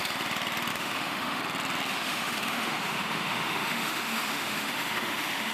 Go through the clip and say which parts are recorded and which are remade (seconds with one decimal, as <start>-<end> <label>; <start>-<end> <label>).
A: 0.0-0.7 recorded; 0.7-1.4 remade; 1.4-1.9 recorded; 1.9-5.5 remade

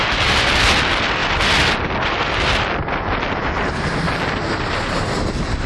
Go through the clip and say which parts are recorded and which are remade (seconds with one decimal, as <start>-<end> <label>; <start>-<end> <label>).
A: 0.0-5.7 recorded

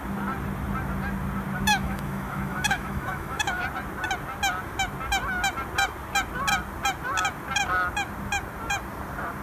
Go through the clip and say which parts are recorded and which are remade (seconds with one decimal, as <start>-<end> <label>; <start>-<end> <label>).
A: 0.0-1.7 recorded; 1.7-3.6 remade; 3.6-9.4 recorded

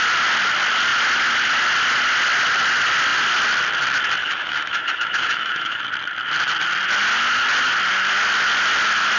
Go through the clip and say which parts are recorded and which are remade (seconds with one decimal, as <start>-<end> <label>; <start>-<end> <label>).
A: 0.0-4.2 recorded; 4.2-5.8 remade; 5.8-9.2 recorded

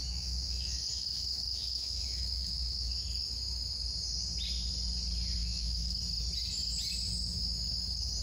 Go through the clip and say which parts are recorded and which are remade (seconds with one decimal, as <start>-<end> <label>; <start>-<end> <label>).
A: 0.0-3.0 remade; 3.0-5.4 recorded; 5.4-6.0 remade; 6.0-8.2 recorded

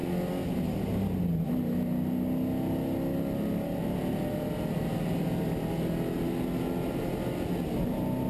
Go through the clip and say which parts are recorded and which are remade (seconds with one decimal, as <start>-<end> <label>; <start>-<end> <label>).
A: 0.0-8.3 recorded